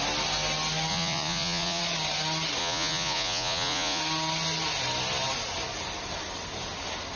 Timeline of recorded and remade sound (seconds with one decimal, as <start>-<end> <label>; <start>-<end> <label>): 0.0-0.9 recorded; 0.9-1.8 remade; 1.8-2.6 recorded; 2.6-4.0 remade; 4.0-7.2 recorded